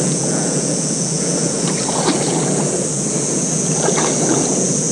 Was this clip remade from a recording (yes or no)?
yes